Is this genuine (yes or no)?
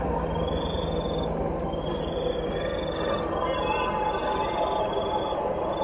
yes